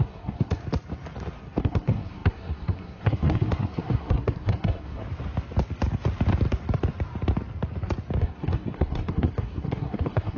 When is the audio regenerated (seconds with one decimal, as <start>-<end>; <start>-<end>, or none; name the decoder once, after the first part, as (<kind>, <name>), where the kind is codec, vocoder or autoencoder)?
0.0-0.6 (codec, SNAC); 1.6-5.0; 8.2-10.4